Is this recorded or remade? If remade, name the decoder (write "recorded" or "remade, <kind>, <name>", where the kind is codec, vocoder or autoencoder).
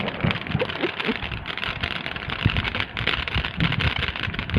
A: recorded